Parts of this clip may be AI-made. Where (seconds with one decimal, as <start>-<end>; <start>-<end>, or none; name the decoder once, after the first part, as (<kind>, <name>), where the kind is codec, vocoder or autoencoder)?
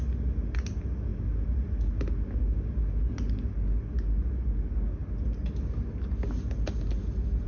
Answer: none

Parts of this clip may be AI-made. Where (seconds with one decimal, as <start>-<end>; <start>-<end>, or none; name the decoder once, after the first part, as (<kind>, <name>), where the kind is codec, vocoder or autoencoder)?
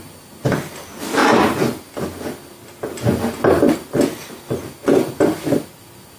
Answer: none